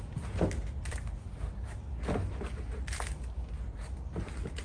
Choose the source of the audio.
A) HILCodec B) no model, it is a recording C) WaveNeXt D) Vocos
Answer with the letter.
B